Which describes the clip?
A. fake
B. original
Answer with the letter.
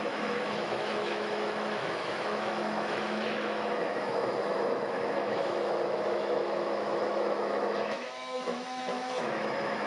A